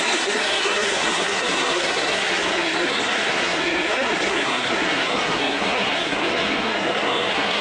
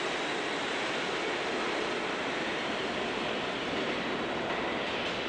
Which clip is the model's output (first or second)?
first